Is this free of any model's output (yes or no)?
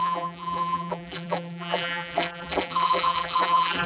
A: no